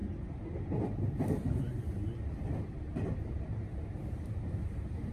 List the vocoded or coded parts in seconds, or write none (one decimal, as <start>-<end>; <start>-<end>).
0.0-1.0; 2.9-5.1